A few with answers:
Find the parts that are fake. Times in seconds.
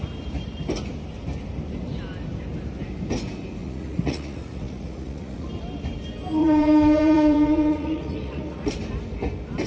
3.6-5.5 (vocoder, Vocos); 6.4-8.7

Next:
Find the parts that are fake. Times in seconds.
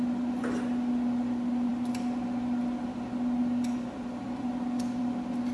none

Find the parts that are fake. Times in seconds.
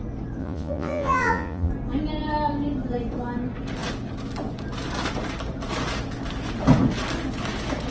0.4-1.7 (vocoder, Vocos)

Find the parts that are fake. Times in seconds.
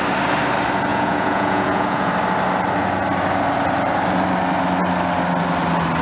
0.9-2.1 (vocoder, Vocos)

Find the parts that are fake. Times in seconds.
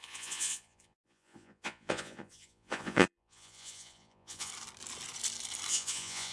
0.0-4.5 (vocoder, Vocos); 5.7-6.3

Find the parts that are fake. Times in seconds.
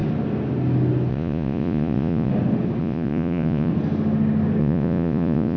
1.1-2.3 (vocoder, Vocos); 2.8-3.7; 4.6-5.6